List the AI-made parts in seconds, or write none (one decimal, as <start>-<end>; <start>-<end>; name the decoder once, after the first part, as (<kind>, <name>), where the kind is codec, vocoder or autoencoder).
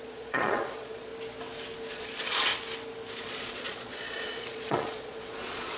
0.0-1.1 (vocoder, Vocos); 1.9-2.5; 3.2-5.8